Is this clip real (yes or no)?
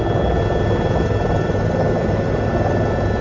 yes